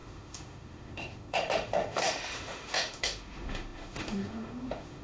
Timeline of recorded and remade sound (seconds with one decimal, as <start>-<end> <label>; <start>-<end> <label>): 0.0-5.0 remade